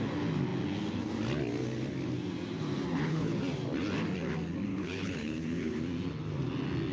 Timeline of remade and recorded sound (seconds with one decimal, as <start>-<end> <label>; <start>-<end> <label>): 0.0-2.9 recorded; 2.9-3.4 remade; 3.4-4.7 recorded; 4.7-5.8 remade; 5.8-6.9 recorded